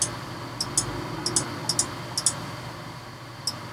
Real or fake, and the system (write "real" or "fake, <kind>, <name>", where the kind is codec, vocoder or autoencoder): real